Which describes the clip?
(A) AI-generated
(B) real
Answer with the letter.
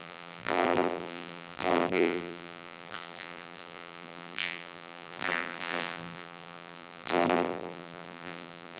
A